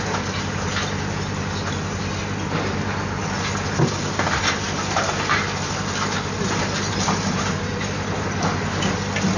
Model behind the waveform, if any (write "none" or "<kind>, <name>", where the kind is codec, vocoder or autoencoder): none